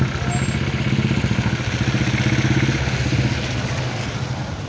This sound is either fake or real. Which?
real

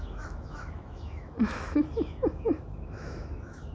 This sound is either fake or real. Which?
fake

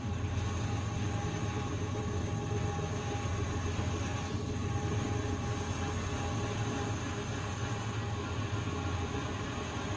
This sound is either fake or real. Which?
real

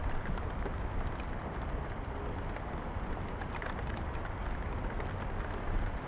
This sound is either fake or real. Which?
real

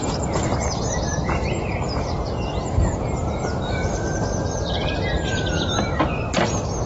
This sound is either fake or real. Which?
fake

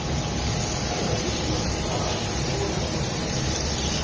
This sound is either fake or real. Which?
real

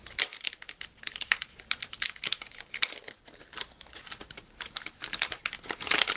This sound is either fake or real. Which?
fake